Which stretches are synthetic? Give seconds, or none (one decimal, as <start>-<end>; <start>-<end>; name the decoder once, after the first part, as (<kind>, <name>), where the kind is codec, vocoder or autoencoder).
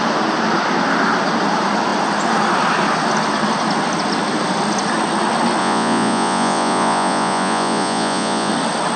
5.6-8.5 (vocoder, Vocos)